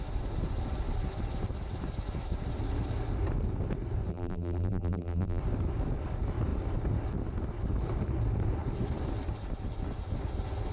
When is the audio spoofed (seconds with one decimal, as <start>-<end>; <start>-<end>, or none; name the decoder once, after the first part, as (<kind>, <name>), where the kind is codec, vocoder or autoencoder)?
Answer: 4.1-5.4 (vocoder, BigVGAN v2)